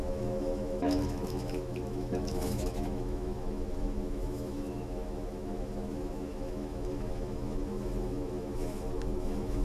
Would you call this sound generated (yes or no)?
yes